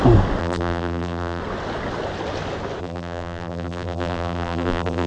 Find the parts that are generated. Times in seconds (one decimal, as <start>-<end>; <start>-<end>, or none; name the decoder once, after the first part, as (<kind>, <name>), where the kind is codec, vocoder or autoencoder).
0.4-1.4 (vocoder, BigVGAN v2); 2.8-5.1